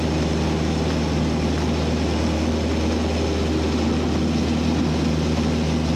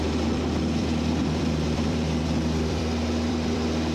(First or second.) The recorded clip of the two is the first